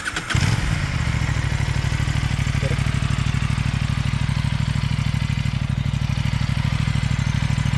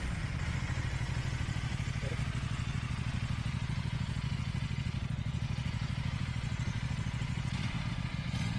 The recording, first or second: first